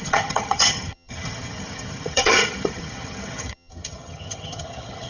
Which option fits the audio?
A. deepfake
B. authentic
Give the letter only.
A